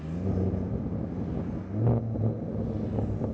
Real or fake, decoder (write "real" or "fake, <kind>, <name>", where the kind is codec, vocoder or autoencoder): real